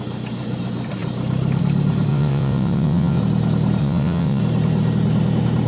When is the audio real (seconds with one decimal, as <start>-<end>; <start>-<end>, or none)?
0.0-2.1; 3.2-3.8; 4.4-5.7